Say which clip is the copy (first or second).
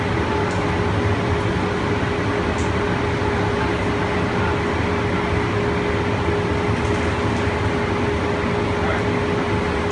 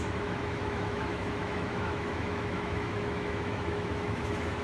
second